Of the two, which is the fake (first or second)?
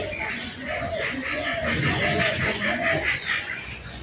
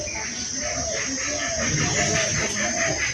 first